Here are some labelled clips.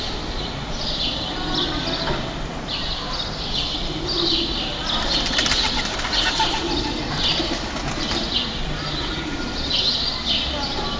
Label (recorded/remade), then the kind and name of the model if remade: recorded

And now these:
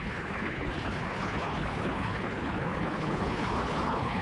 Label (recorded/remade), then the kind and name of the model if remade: remade, codec, HILCodec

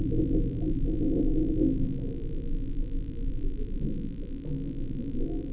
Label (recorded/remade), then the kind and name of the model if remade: recorded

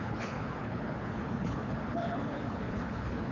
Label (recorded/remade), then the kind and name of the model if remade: remade, codec, HILCodec